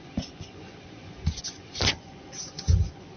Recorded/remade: remade